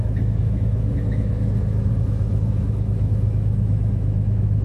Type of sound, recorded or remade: remade